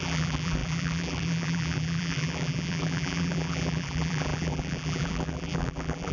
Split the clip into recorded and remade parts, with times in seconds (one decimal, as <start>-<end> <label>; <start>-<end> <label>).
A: 0.0-6.1 remade